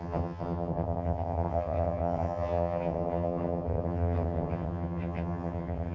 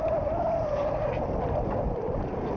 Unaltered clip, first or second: second